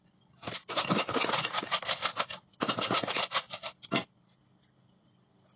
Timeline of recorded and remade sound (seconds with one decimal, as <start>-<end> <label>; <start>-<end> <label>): 0.0-5.6 recorded